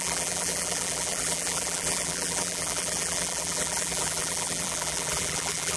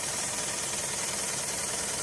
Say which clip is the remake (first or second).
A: first